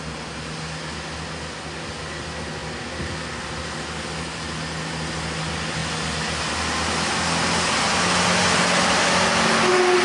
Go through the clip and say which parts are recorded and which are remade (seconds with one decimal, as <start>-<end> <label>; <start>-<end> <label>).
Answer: 0.0-10.0 recorded